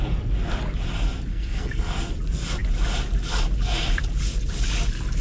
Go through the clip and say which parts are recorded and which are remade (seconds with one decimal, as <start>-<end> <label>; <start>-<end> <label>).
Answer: 0.0-1.3 recorded; 1.3-2.0 remade; 2.0-5.2 recorded